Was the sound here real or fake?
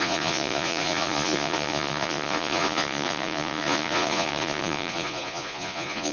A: fake